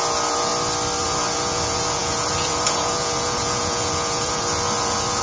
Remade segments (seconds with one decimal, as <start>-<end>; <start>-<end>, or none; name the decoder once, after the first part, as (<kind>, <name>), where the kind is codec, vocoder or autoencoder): 0.0-0.5 (vocoder, Vocos); 1.0-5.2